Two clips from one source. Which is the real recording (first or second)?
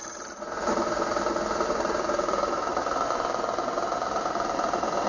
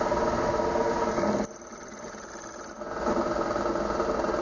second